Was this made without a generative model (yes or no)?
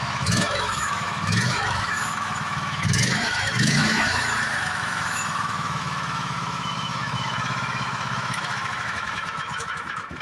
no